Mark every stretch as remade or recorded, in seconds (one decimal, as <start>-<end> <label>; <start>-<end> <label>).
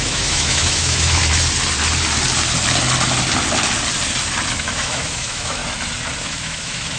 0.0-1.2 remade; 1.2-4.6 recorded; 4.6-5.6 remade; 5.6-6.2 recorded; 6.2-7.0 remade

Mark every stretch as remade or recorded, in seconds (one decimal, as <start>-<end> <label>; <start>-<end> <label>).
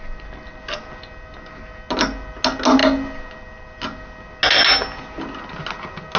0.0-6.2 recorded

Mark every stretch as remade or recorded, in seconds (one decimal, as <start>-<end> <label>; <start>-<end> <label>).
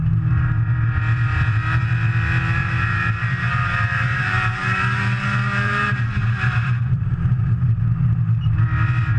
0.0-2.6 recorded; 2.6-7.6 remade; 7.6-9.2 recorded